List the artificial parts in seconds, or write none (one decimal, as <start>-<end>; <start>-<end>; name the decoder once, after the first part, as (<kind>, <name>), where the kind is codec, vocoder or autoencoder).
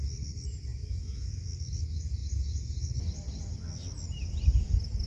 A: 0.7-1.7 (autoencoder, DAC-VAE)